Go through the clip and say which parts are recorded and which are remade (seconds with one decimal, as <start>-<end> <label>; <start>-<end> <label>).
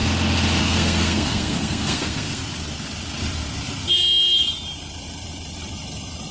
0.0-0.6 recorded; 0.6-2.4 remade; 2.4-6.3 recorded